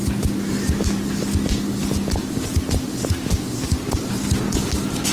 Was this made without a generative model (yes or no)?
yes